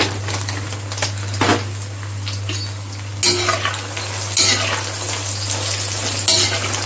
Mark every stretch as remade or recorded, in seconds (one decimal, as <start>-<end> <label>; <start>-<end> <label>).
0.0-6.9 recorded